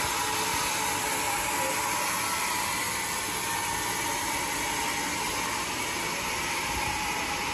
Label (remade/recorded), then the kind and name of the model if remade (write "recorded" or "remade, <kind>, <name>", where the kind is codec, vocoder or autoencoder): recorded